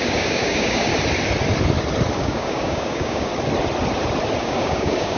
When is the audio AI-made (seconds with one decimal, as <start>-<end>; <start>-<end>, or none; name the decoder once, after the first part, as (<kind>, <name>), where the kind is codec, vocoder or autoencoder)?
0.0-0.9 (codec, DAC); 2.1-3.3; 4.4-5.2